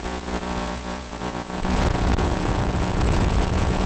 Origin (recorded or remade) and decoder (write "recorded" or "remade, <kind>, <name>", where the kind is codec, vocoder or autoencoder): remade, vocoder, Vocos